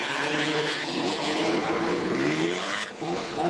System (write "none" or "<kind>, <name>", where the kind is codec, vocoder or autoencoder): codec, HILCodec